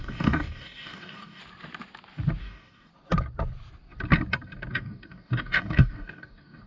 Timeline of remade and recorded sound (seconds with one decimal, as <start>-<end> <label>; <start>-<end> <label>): 0.0-1.4 remade; 1.4-2.4 recorded; 2.4-2.9 remade; 2.9-4.7 recorded; 4.7-6.7 remade